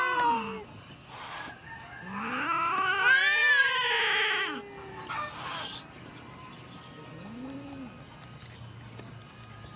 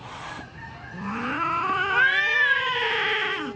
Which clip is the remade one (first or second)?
second